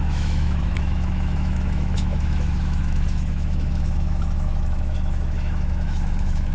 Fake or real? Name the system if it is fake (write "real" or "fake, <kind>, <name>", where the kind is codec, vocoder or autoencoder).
fake, autoencoder, DAC-VAE